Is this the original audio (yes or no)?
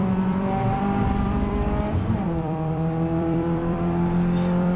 no